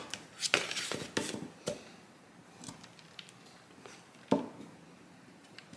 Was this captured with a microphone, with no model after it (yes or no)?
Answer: yes